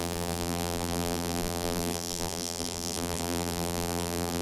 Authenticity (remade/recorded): remade